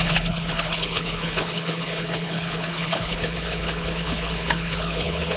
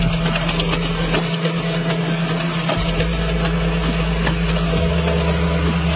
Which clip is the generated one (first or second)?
first